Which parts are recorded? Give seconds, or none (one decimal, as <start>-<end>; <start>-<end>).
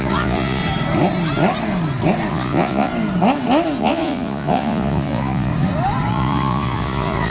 0.6-2.3; 2.9-3.8; 5.5-6.1